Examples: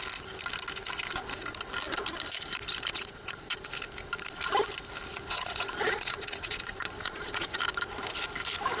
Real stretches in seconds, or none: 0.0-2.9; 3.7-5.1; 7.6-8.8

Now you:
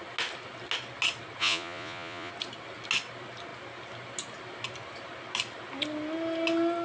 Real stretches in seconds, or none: 0.0-1.4; 2.3-6.8

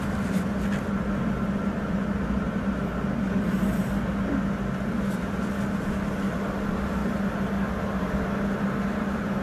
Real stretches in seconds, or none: 0.0-9.4

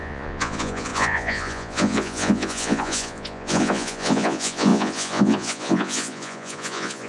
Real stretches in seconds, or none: none

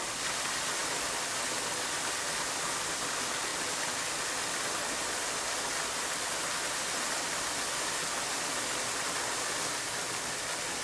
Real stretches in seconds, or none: 0.0-10.8